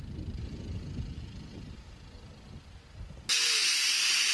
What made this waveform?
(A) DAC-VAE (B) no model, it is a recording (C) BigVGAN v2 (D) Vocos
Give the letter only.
B